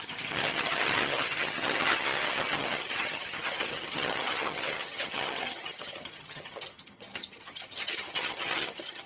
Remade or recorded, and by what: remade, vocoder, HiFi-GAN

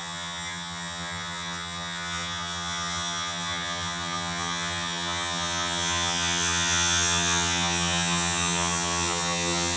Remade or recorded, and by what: remade, vocoder, HiFi-GAN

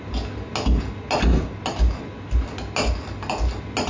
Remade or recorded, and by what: recorded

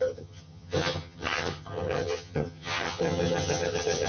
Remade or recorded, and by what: remade, vocoder, HiFi-GAN